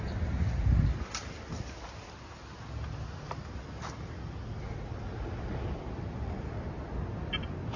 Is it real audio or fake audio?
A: real